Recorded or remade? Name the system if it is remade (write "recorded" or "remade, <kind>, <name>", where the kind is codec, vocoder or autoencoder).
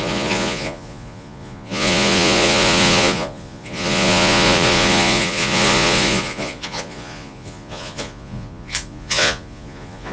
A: remade, vocoder, Vocos